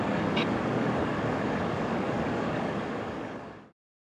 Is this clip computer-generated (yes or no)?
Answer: yes